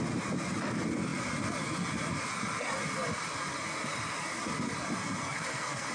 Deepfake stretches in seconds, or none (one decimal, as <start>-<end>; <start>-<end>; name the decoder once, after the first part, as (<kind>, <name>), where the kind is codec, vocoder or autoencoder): 5.2-5.9 (codec, SNAC)